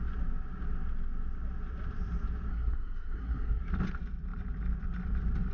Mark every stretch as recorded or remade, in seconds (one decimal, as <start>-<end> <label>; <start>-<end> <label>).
0.0-2.5 recorded; 2.5-3.6 remade; 3.6-5.5 recorded